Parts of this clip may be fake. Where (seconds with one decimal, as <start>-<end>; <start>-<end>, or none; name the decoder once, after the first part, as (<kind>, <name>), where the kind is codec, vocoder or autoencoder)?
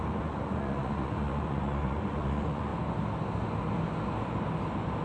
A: 0.0-2.7 (vocoder, Vocos)